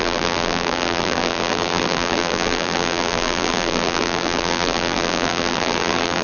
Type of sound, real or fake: fake